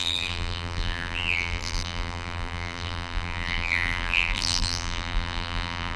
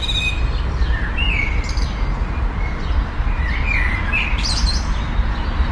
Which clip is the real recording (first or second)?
second